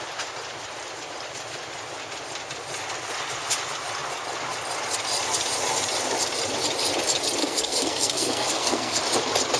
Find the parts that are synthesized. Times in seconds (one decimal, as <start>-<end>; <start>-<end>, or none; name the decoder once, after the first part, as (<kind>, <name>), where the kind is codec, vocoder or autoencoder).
7.4-9.0 (codec, SNAC)